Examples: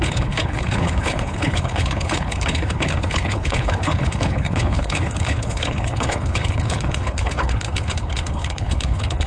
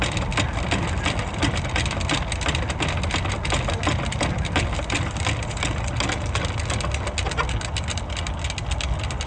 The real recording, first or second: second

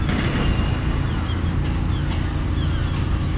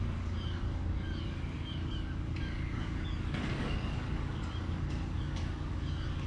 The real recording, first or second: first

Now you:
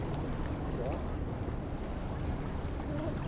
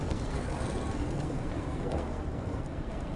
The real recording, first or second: first